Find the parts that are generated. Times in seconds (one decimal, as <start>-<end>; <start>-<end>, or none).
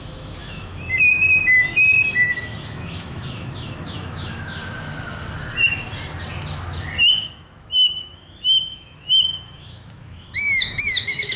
0.0-4.6; 7.1-11.4